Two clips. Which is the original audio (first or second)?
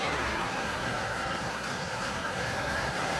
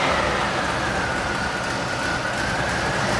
second